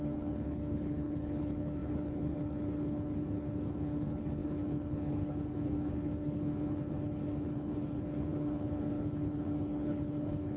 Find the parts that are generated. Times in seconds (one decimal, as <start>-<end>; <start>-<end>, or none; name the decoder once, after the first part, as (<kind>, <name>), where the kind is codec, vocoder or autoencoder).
0.0-10.6 (codec, HILCodec)